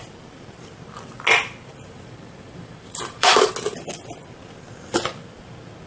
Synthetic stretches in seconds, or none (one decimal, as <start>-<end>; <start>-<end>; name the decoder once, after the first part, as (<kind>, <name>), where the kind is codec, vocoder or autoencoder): 1.7-3.5 (vocoder, BigVGAN v2)